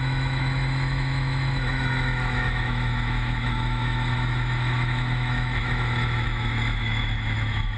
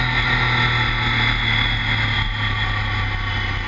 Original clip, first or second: second